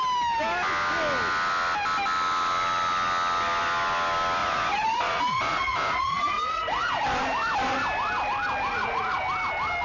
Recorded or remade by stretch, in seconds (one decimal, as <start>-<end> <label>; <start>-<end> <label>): 0.0-4.4 recorded; 4.4-7.0 remade; 7.0-8.7 recorded; 8.7-9.2 remade; 9.2-9.8 recorded